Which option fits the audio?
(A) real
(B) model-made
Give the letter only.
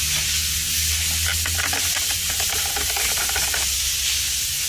A